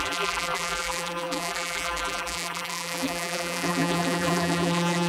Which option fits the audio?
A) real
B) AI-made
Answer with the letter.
B